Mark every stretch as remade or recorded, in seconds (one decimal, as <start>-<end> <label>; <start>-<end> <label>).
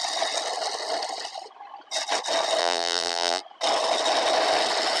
0.0-2.6 recorded; 2.6-3.4 remade; 3.4-5.0 recorded